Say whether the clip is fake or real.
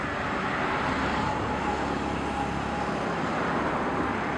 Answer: real